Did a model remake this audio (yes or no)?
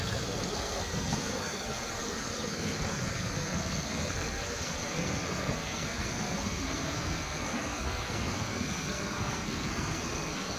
yes